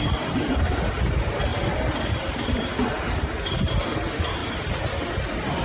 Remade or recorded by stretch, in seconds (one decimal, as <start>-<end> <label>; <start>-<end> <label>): 0.0-1.5 recorded; 1.5-2.1 remade; 2.1-4.4 recorded; 4.4-5.0 remade; 5.0-5.6 recorded